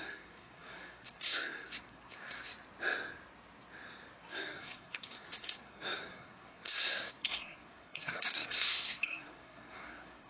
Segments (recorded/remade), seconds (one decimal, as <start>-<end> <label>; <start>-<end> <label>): 0.0-2.5 remade; 2.5-4.3 recorded; 4.3-10.3 remade